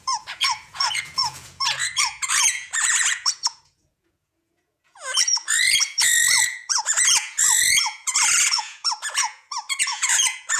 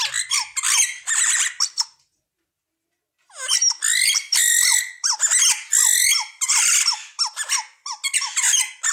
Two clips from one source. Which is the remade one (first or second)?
first